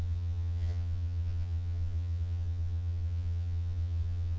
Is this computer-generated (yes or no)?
yes